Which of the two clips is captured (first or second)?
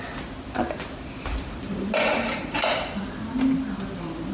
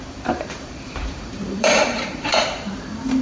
first